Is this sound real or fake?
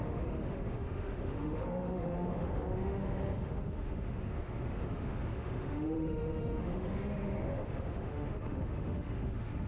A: fake